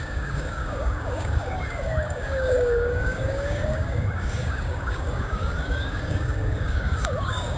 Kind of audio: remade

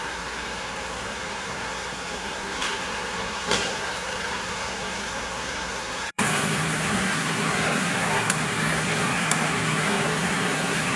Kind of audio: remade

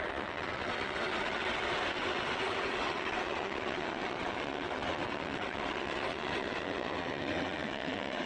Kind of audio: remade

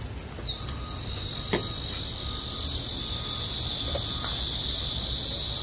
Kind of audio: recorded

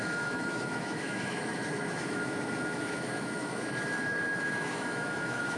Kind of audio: remade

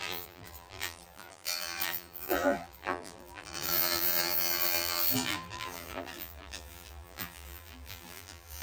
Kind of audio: remade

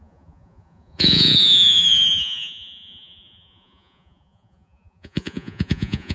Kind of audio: remade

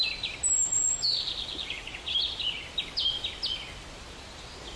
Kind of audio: recorded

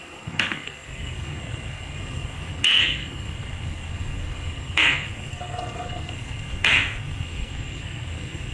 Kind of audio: remade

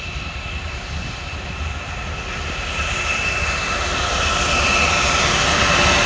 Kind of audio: recorded